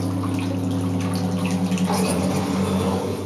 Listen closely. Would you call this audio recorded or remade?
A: recorded